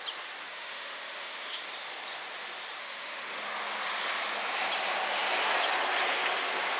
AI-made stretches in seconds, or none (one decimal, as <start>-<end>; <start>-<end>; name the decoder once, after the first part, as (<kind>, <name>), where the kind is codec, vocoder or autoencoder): 0.5-1.6 (autoencoder, DAC-VAE); 2.8-3.4